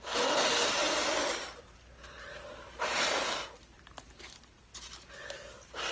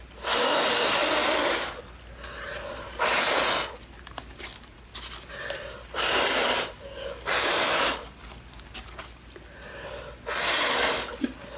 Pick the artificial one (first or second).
first